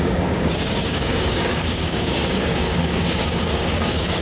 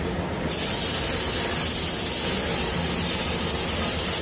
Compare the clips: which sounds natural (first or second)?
second